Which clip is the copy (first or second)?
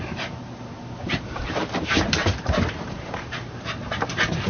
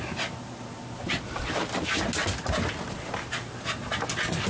first